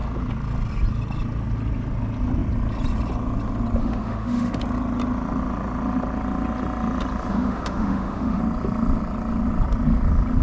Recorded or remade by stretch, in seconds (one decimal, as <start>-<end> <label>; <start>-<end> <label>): 0.0-3.8 recorded; 3.8-4.6 remade; 4.6-7.3 recorded; 7.3-8.4 remade; 8.4-10.4 recorded